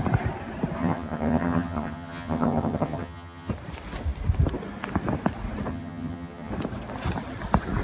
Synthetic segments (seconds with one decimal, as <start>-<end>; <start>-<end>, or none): 0.8-3.5; 5.7-6.5